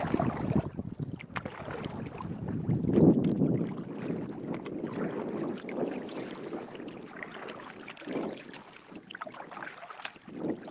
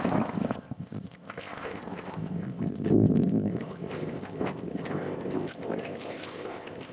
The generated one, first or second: second